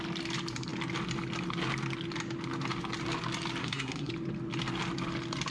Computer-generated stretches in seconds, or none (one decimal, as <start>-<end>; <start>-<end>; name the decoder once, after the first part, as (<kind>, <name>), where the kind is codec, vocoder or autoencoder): 3.6-4.1 (codec, SNAC)